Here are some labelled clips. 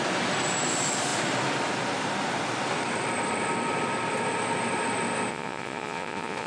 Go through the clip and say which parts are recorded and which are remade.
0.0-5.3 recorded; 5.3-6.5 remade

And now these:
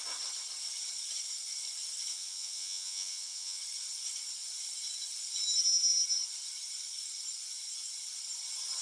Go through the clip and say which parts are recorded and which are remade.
0.0-2.1 recorded; 2.1-3.6 remade; 3.6-8.8 recorded

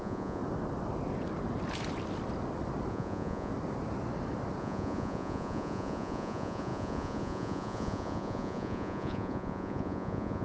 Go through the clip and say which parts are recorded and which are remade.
0.0-0.4 remade; 0.4-2.9 recorded; 2.9-3.5 remade; 3.5-4.6 recorded; 4.6-10.4 remade

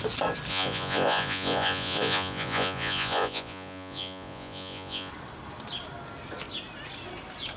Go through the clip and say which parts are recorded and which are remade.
0.0-0.5 recorded; 0.5-5.1 remade; 5.1-7.6 recorded